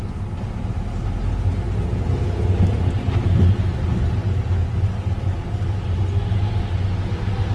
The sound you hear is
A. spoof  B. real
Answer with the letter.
B